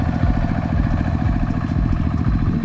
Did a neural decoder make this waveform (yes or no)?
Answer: no